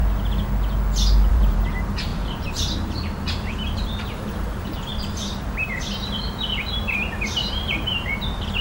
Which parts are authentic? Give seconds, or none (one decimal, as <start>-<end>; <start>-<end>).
0.0-1.3

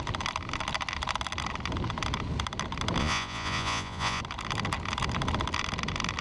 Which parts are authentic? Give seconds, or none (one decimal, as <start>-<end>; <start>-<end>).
0.0-3.0; 4.2-6.2

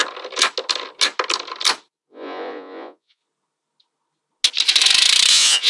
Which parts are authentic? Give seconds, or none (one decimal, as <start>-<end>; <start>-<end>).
0.0-2.1; 3.2-5.3

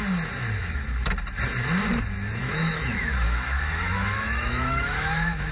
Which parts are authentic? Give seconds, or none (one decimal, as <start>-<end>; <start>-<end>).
0.0-0.6; 1.1-2.4

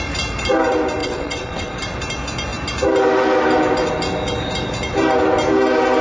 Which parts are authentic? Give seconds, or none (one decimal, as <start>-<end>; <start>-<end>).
0.0-1.0; 1.7-6.0

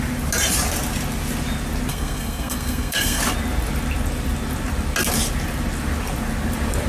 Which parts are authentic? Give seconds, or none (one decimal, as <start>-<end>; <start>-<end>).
0.0-1.9; 3.2-6.9

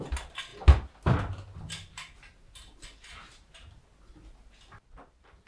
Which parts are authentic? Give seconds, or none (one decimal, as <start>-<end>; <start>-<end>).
0.0-5.5

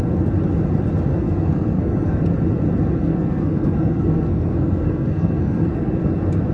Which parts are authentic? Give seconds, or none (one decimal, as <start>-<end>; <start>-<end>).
0.0-1.1; 2.2-3.1; 6.1-6.5